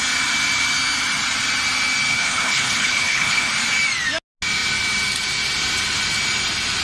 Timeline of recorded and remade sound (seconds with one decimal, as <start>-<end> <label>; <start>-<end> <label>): 0.0-2.1 recorded; 2.1-3.5 remade; 3.5-6.8 recorded